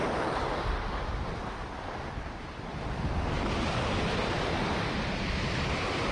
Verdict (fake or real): real